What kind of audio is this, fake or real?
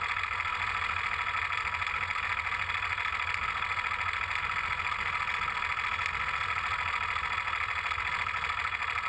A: real